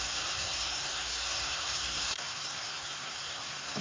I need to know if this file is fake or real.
fake